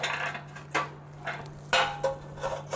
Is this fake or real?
real